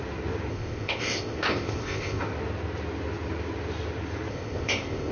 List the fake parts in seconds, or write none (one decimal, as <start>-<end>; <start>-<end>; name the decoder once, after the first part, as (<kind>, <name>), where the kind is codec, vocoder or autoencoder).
0.5-2.2 (codec, ZipCodec); 4.3-5.1